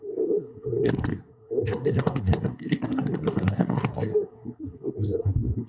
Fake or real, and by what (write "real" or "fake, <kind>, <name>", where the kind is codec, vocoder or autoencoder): fake, codec, SNAC